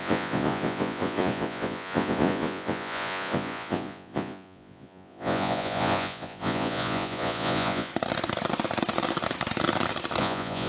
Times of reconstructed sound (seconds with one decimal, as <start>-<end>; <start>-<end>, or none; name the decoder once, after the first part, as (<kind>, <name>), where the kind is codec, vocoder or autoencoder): 0.0-7.9 (vocoder, Vocos); 10.2-10.7